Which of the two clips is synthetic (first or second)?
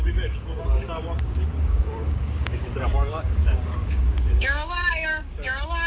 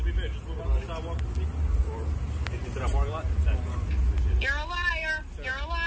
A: first